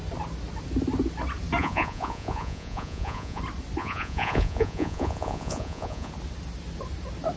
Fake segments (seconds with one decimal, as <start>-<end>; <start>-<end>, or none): 1.6-3.4; 3.8-6.1